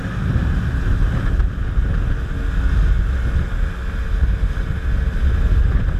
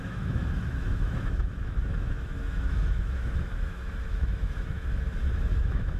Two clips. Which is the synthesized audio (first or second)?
second